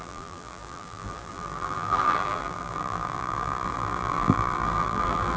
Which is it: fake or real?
fake